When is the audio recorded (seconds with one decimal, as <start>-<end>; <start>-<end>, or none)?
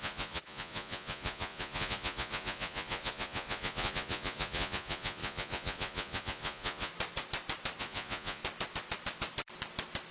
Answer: 6.9-7.8; 8.4-10.1